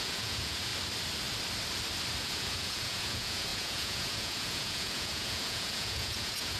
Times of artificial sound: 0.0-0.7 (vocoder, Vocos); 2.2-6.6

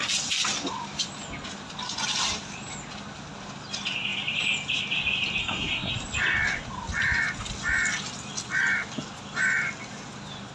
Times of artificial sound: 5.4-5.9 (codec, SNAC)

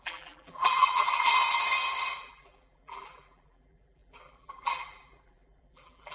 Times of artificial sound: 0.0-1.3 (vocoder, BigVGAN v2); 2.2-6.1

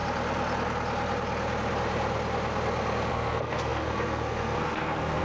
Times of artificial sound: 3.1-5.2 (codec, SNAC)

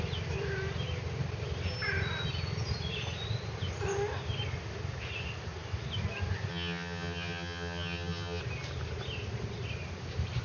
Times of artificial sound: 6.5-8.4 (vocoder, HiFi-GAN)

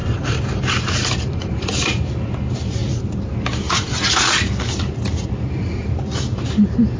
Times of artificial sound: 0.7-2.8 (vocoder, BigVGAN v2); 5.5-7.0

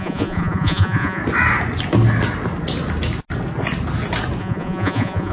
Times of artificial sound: 0.0-1.2 (vocoder, Vocos); 4.4-5.3